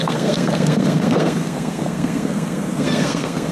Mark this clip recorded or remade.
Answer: remade